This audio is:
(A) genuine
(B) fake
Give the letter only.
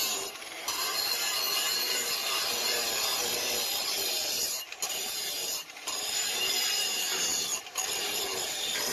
B